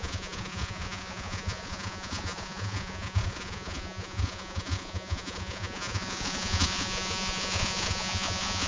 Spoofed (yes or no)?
yes